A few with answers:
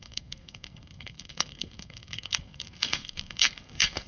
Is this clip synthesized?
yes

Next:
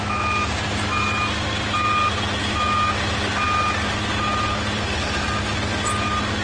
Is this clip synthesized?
no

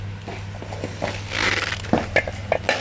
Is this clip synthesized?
no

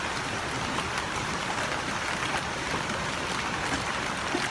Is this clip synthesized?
yes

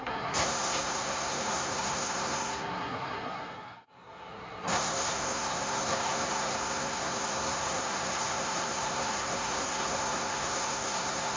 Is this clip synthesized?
yes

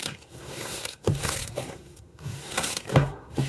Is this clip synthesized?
yes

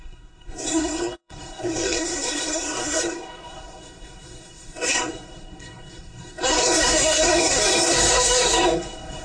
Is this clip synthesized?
yes